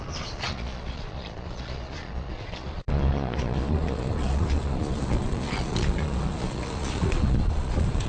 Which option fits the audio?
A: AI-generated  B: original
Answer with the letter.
A